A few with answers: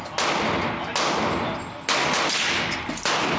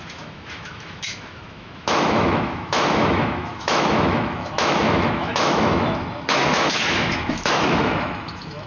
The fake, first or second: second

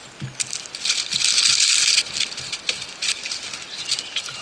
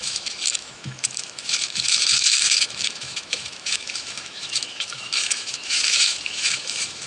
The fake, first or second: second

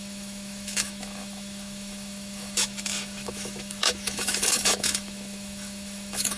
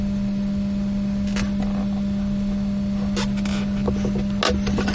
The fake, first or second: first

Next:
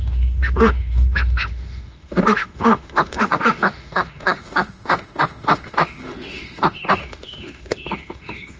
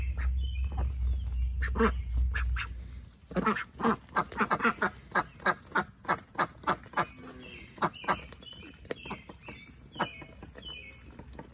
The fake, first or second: first